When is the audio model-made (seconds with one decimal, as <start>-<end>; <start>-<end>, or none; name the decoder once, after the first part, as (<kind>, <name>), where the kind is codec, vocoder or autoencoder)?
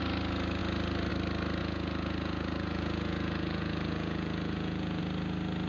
1.6-5.0 (vocoder, Vocos)